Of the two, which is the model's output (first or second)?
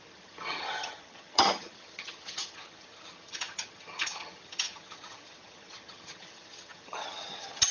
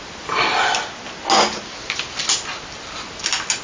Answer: first